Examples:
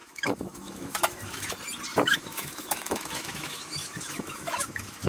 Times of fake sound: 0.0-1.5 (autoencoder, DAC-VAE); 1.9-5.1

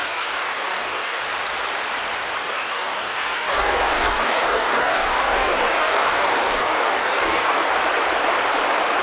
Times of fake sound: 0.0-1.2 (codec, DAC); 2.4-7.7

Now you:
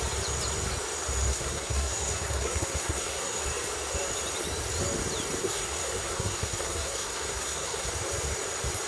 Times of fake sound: 1.3-3.4 (codec, SNAC); 5.4-7.9

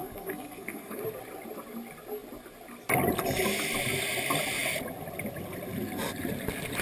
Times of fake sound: 0.0-1.0 (codec, SNAC)